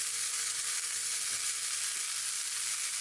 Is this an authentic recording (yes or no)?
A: yes